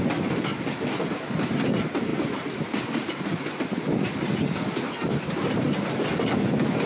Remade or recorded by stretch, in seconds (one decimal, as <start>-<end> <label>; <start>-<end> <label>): 0.0-6.9 recorded